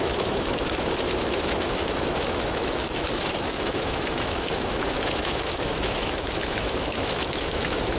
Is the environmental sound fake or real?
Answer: fake